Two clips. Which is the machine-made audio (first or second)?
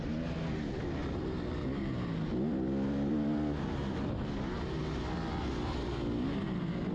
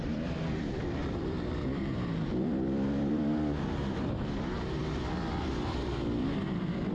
second